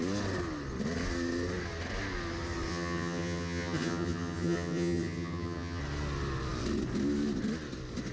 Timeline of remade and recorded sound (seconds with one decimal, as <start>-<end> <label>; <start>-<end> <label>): 0.0-2.7 recorded; 2.7-5.8 remade; 5.8-8.1 recorded